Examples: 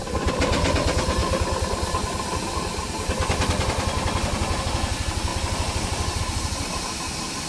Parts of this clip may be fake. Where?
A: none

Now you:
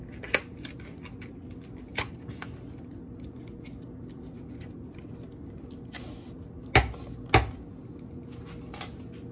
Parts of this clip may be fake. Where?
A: none

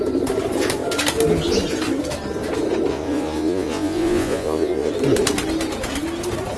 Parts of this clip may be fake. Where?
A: 2.9-4.9 (vocoder, Vocos)

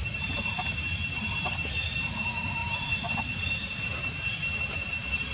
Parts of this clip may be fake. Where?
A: 0.0-1.7 (vocoder, BigVGAN v2); 2.6-4.6

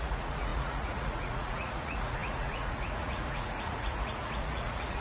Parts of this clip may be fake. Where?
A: 0.0-5.0 (vocoder, Vocos)